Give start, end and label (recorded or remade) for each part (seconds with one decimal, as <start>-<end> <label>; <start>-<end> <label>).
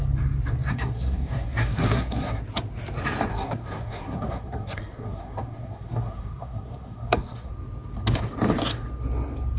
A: 0.0-0.7 recorded; 0.7-2.4 remade; 2.4-3.3 recorded; 3.3-7.5 remade; 7.5-9.6 recorded